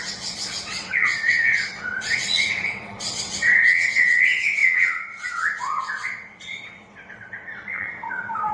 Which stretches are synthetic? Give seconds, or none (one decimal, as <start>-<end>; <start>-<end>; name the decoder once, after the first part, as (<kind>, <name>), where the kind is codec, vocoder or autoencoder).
0.0-8.5 (vocoder, WaveNeXt)